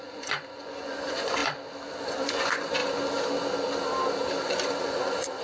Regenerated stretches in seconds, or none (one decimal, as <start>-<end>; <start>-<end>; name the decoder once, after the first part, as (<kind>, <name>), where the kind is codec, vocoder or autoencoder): 0.0-1.4 (vocoder, Vocos); 2.0-2.8; 4.4-5.4